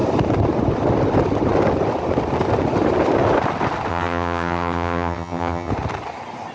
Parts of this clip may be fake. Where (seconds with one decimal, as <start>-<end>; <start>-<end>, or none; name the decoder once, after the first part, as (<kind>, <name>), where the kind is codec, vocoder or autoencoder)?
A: 3.9-5.7 (vocoder, HiFi-GAN)